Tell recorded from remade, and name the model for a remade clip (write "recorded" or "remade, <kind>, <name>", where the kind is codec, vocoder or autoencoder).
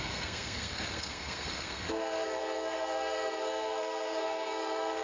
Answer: remade, codec, SNAC